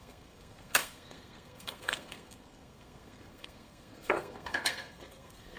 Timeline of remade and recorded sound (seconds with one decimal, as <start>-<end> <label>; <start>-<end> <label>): 0.0-5.6 remade